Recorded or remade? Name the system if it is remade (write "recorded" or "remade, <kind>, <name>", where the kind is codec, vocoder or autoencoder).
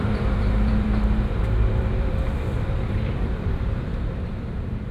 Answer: remade, vocoder, BigVGAN v2